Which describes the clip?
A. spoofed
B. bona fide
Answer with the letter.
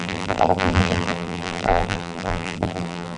A